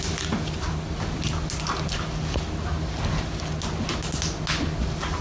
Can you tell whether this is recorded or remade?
recorded